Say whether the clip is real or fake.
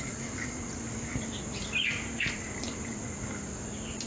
real